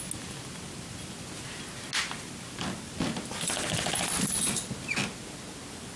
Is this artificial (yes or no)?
no